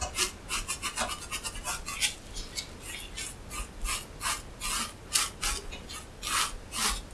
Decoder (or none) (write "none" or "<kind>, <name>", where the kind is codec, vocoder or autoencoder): none